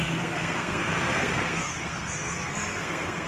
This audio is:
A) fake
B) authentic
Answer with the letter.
A